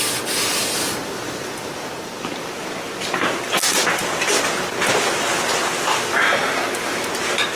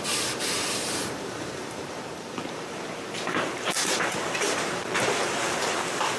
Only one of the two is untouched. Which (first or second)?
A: first